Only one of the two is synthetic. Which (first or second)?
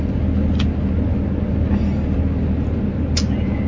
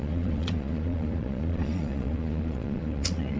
second